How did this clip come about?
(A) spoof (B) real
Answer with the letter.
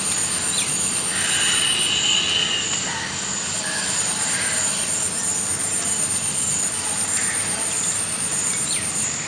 B